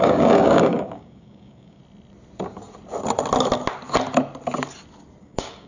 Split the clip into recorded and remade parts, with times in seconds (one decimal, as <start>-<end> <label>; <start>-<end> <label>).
0.0-1.8 remade; 1.8-5.2 recorded; 5.2-5.7 remade